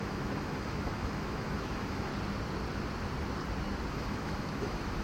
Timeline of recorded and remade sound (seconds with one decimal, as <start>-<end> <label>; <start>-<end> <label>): 0.0-2.1 remade; 2.1-3.9 recorded; 3.9-5.0 remade